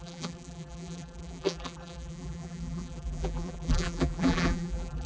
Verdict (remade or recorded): remade